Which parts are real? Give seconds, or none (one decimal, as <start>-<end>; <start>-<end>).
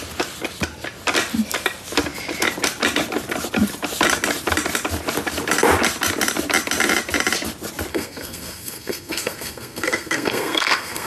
0.0-7.9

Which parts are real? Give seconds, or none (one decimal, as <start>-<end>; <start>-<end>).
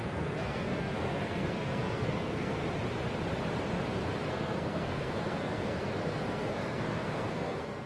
2.6-4.3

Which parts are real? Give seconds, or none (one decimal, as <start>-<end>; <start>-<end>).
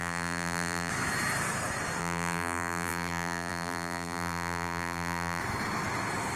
0.9-2.0; 5.4-6.4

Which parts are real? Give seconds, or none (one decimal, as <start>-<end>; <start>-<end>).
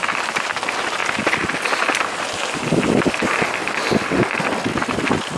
0.0-5.4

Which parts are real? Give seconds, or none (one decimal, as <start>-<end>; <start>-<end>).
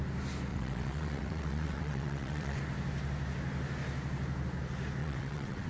0.0-0.5; 2.6-5.0